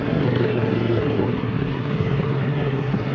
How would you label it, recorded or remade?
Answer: remade